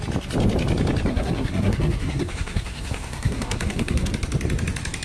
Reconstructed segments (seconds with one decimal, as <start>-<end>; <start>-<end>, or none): 1.1-4.1